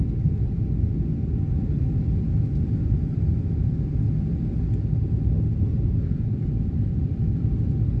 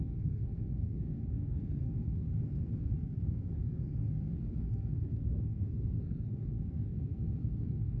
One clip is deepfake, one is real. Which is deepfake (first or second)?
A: second